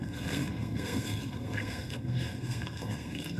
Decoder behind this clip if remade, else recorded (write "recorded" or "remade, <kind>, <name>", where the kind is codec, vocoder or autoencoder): remade, codec, SNAC